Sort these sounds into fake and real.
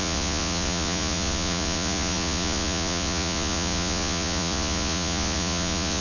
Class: fake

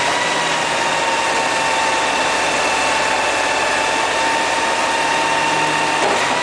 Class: real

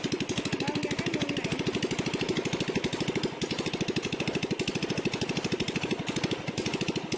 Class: real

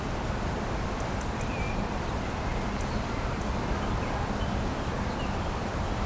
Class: real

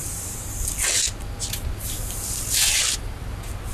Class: real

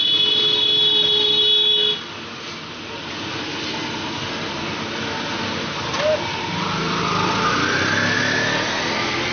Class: real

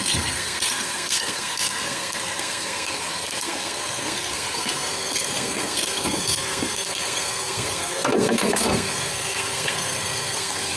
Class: fake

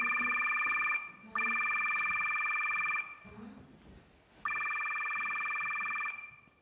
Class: real